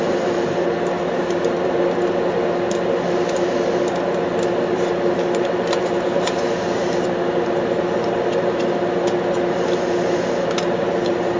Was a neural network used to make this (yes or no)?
no